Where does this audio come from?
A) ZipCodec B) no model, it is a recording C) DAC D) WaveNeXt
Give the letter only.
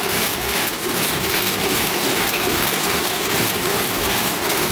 C